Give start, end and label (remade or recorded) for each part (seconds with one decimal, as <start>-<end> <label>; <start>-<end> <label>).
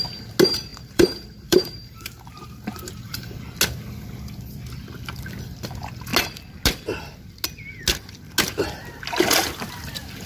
0.0-0.7 recorded; 0.7-3.4 remade; 3.4-10.3 recorded